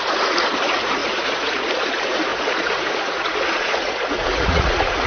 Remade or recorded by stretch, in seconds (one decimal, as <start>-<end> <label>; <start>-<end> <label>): 0.0-5.1 remade